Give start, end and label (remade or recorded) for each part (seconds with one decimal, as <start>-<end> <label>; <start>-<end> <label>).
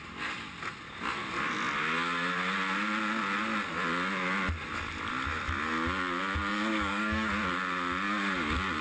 0.0-6.5 recorded; 6.5-7.3 remade; 7.3-8.8 recorded